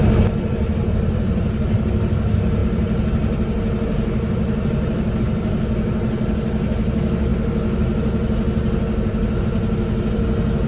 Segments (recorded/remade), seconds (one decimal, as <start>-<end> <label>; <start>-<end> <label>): 0.0-10.7 recorded